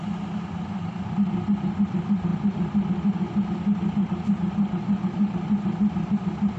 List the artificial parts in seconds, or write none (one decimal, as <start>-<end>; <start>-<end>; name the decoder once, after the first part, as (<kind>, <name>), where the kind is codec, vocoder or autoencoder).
none